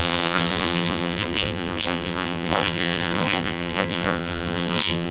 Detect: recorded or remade remade